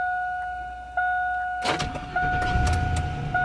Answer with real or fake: real